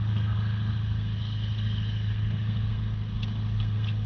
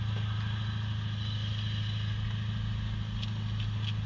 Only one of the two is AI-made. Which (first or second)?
first